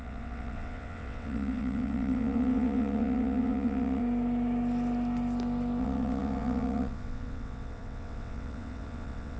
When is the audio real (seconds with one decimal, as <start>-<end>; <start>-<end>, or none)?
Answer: 4.0-5.8